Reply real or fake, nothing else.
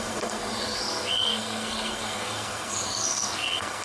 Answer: fake